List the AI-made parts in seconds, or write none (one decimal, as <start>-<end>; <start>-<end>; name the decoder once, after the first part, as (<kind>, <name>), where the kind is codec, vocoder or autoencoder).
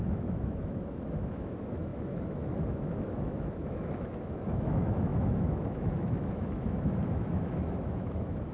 0.0-8.5 (autoencoder, DAC-VAE)